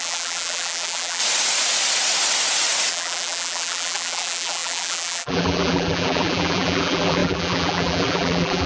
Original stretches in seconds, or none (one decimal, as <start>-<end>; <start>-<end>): 1.2-2.9